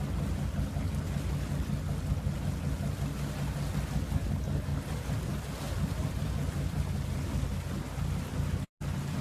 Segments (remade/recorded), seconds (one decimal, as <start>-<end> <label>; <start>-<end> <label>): 0.0-4.7 recorded; 4.7-5.6 remade; 5.6-6.0 recorded; 6.0-7.3 remade; 7.3-9.2 recorded